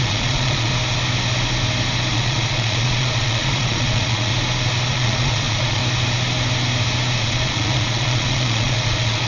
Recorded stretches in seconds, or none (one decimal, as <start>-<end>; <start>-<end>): 0.7-2.1; 4.3-4.9; 5.8-7.2